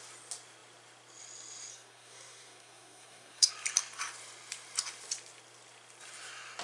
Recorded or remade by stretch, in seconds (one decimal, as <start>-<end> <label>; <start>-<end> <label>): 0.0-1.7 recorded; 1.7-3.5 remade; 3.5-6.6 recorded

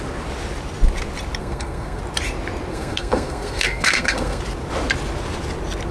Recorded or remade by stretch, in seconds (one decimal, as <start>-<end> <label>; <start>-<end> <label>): 0.0-1.4 recorded; 1.4-2.0 remade; 2.0-2.7 recorded; 2.7-4.4 remade; 4.4-5.9 recorded

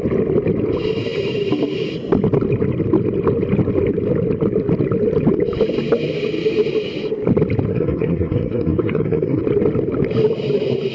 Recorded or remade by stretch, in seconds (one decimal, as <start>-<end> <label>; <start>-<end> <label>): 0.0-7.7 recorded; 7.7-9.4 remade; 9.4-10.9 recorded

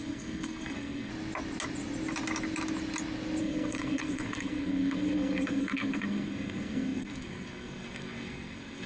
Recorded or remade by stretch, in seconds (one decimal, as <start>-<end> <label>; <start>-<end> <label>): 0.0-1.1 remade; 1.1-3.4 recorded; 3.4-8.9 remade

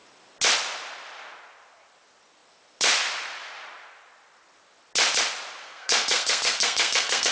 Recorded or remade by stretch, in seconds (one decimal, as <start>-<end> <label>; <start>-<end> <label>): 0.0-5.6 recorded; 5.6-7.3 remade

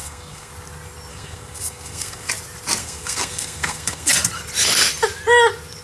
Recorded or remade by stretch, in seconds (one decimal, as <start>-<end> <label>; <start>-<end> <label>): 0.0-0.5 remade; 0.5-1.1 recorded; 1.1-2.3 remade; 2.3-2.8 recorded; 2.8-4.1 remade; 4.1-5.8 recorded

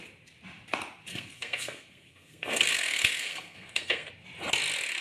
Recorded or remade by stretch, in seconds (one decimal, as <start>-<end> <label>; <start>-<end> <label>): 0.0-1.1 recorded; 1.1-4.1 remade; 4.1-5.0 recorded